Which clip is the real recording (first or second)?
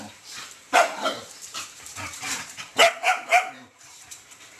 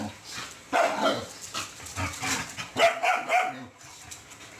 second